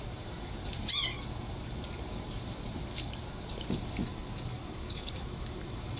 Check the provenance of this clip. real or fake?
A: fake